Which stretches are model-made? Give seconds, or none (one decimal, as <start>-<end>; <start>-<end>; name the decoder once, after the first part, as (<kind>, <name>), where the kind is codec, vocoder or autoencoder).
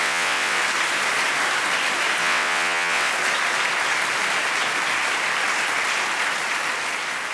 0.0-0.6 (vocoder, WaveNeXt); 2.2-3.1